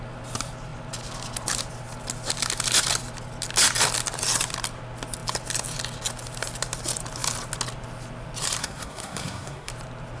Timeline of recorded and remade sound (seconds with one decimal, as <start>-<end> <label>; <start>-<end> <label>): 0.0-8.6 recorded; 8.6-9.7 remade; 9.7-10.2 recorded